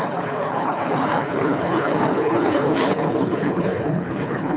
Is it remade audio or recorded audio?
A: remade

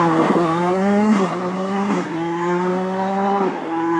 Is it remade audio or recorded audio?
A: remade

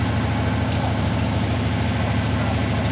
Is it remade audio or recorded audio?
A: recorded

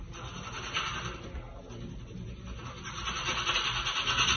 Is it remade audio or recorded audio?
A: recorded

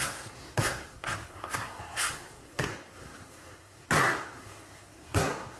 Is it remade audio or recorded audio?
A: remade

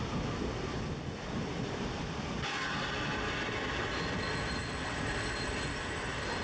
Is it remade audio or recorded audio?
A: recorded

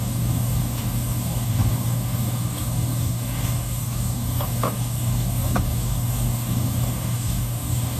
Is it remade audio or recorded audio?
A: remade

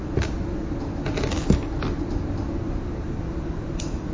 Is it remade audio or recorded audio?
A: recorded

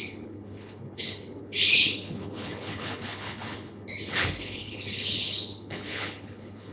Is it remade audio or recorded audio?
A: remade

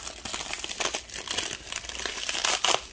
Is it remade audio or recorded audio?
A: recorded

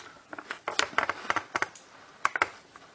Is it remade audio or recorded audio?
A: recorded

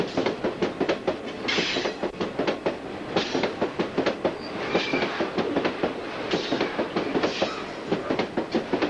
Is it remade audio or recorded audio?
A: recorded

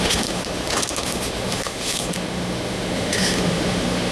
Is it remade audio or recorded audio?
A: remade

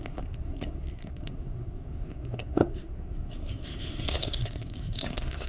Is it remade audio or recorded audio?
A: remade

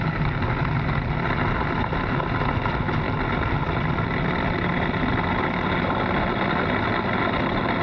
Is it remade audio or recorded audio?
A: recorded